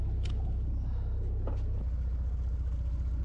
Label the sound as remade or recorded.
recorded